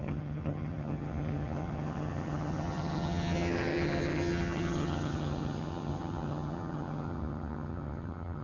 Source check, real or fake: fake